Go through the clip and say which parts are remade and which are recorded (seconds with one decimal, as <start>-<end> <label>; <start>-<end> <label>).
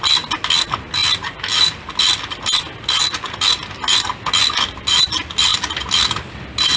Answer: 0.0-6.8 recorded